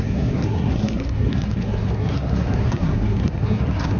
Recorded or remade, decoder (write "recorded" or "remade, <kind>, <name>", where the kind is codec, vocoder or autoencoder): remade, codec, SNAC